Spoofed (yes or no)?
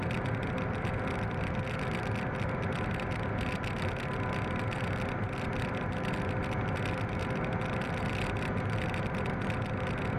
no